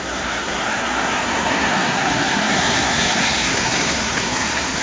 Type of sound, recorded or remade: remade